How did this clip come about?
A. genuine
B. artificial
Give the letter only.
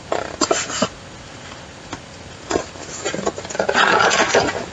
A